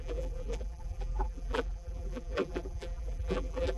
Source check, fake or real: fake